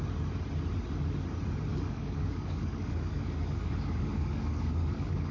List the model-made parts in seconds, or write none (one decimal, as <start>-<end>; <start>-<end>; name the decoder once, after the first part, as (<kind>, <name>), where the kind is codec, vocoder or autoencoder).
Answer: 1.7-5.3 (codec, DAC)